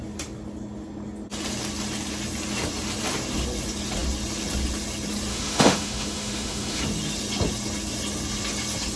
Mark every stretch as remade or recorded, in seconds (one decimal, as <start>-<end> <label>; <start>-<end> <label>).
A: 0.0-5.3 recorded; 5.3-6.8 remade; 6.8-9.0 recorded